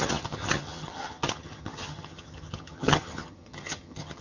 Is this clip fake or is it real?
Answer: fake